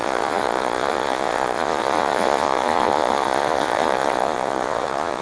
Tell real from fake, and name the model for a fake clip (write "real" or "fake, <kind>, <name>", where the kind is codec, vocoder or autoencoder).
fake, vocoder, Vocos